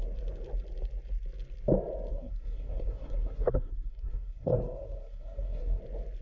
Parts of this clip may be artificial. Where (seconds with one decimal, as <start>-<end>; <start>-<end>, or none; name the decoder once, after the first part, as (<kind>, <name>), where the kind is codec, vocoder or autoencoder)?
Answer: 2.1-5.8 (codec, SNAC)